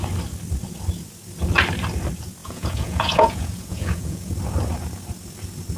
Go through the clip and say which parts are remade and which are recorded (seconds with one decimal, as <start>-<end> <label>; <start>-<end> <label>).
0.0-2.4 recorded; 2.4-4.3 remade; 4.3-5.8 recorded